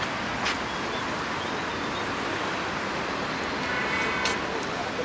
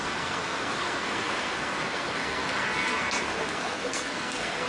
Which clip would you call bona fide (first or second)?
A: first